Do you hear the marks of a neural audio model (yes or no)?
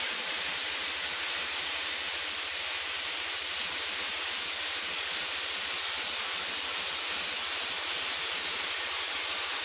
no